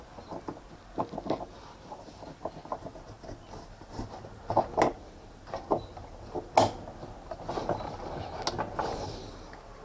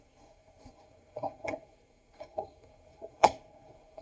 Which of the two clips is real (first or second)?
first